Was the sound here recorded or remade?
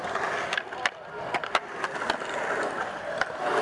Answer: recorded